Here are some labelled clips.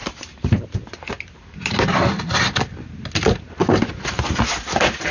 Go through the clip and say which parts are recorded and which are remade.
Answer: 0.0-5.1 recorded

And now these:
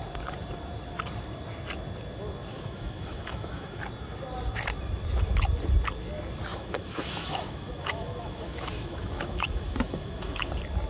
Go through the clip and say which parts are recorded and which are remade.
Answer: 0.0-2.5 recorded; 2.5-3.8 remade; 3.8-6.5 recorded; 6.5-10.5 remade; 10.5-10.9 recorded

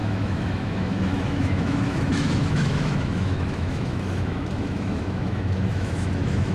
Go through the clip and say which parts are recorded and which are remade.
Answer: 0.0-6.5 remade

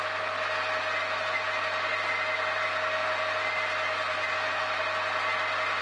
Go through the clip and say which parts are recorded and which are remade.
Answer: 0.0-5.8 recorded

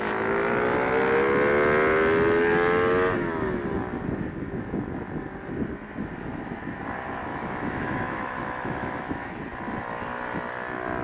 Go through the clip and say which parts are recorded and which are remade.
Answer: 0.0-7.3 recorded; 7.3-9.3 remade; 9.3-11.0 recorded

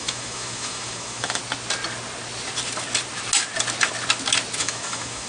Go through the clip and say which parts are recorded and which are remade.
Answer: 0.0-1.4 remade; 1.4-4.6 recorded; 4.6-5.3 remade

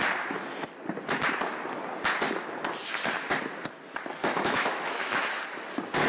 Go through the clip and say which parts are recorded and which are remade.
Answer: 0.0-4.2 recorded; 4.2-5.4 remade; 5.4-6.1 recorded

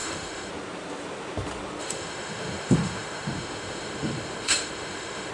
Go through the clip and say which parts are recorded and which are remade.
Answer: 0.0-0.5 remade; 0.5-1.8 recorded; 1.8-5.3 remade